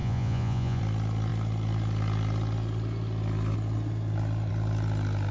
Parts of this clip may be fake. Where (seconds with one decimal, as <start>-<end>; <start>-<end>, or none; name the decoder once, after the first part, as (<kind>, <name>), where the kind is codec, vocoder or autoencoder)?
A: 0.0-0.8 (vocoder, Vocos)